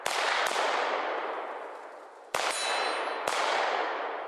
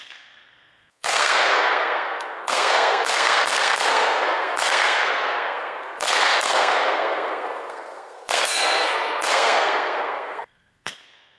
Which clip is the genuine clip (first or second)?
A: first